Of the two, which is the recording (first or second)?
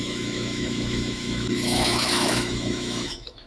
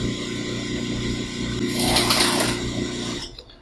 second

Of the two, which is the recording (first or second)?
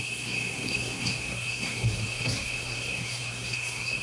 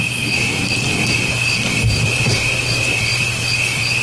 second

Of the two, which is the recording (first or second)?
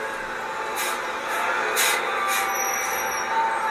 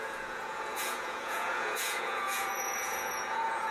first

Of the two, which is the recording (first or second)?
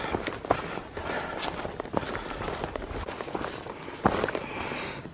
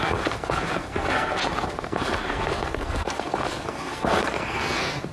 first